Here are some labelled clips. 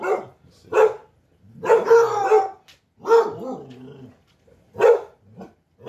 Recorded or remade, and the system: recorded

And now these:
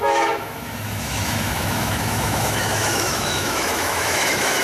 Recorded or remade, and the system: remade, autoencoder, DAC-VAE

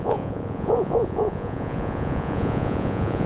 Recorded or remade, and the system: remade, vocoder, Vocos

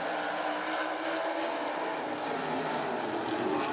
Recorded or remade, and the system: recorded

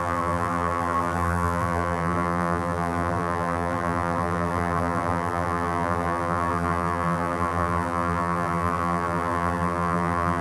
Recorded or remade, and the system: remade, vocoder, BigVGAN v2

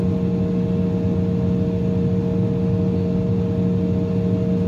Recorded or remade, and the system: recorded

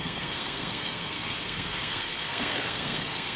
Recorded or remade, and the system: remade, codec, SNAC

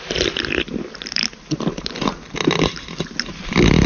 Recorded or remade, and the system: recorded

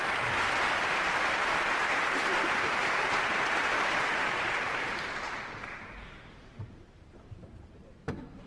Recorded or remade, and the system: remade, vocoder, BigVGAN v2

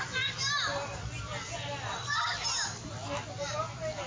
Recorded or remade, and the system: recorded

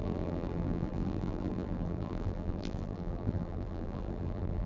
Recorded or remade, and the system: remade, vocoder, BigVGAN v2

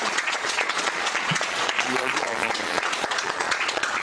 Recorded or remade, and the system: remade, vocoder, Vocos